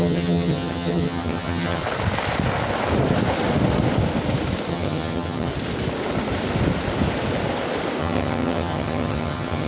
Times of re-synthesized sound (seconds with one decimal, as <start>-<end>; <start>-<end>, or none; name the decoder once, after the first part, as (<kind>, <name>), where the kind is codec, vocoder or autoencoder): 0.0-1.8 (vocoder, HiFi-GAN); 4.7-5.5; 8.0-9.7